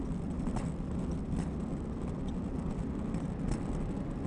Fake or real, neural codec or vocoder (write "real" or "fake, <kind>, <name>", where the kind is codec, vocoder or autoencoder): real